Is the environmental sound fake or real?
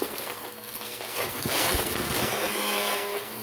fake